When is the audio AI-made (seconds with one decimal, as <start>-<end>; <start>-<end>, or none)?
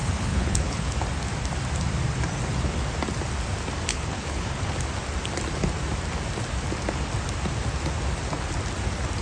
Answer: 0.0-0.9; 3.9-4.7